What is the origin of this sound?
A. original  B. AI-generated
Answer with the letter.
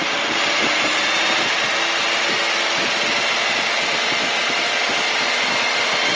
A